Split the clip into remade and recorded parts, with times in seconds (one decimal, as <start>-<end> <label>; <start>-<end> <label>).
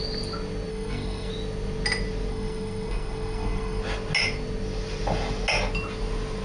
0.0-0.7 recorded; 0.7-1.3 remade; 1.3-2.3 recorded; 2.3-3.8 remade; 3.8-6.4 recorded